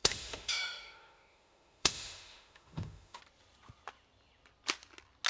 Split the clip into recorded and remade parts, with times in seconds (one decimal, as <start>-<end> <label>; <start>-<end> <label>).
0.0-3.2 remade; 3.2-5.3 recorded